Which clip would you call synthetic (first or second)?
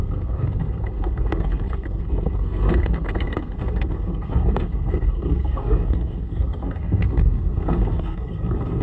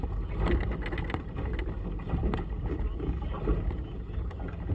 first